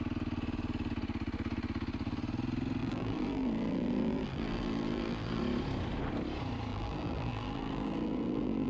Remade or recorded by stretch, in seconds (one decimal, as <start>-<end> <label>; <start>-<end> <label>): 0.0-2.8 recorded; 2.8-5.4 remade; 5.4-6.7 recorded; 6.7-8.7 remade